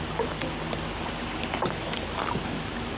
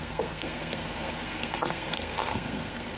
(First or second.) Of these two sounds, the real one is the first